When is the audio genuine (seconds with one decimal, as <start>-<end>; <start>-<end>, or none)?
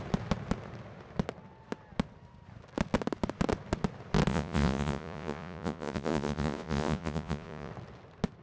0.0-4.3; 7.7-8.4